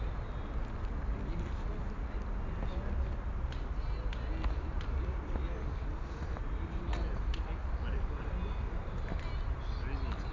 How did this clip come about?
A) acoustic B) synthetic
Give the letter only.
A